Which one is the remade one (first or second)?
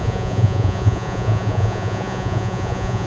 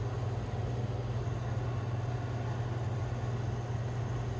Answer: first